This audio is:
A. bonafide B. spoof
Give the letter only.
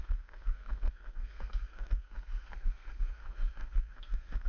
B